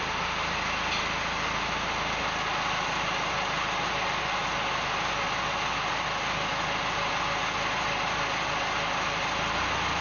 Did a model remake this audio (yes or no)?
no